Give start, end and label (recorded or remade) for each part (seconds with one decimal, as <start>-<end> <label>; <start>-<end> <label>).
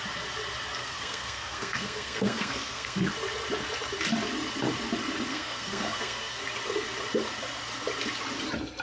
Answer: 0.0-0.8 recorded; 0.8-3.1 remade; 3.1-5.3 recorded; 5.3-6.4 remade; 6.4-8.8 recorded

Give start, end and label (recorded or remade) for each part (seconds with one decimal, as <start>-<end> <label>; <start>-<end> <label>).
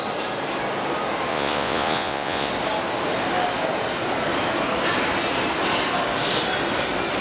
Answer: 0.0-1.3 recorded; 1.3-2.5 remade; 2.5-7.2 recorded